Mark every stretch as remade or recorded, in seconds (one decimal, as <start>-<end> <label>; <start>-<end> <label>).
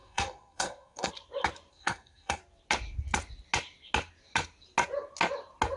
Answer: 0.0-1.1 remade; 1.1-1.7 recorded; 1.7-2.4 remade; 2.4-5.8 recorded